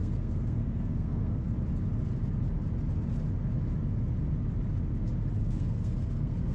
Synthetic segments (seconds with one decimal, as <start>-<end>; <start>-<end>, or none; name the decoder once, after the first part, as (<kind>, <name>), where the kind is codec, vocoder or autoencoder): 0.0-1.5 (codec, SNAC); 5.4-6.5